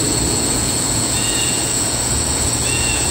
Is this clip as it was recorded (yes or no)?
no